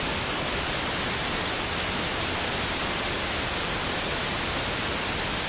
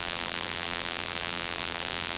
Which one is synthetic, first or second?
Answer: second